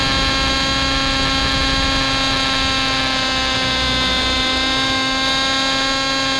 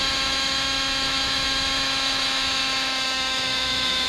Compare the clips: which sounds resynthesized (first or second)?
second